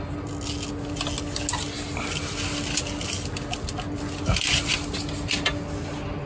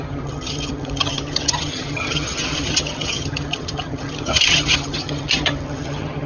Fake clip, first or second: second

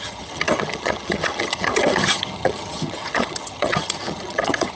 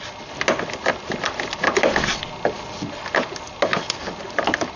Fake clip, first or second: first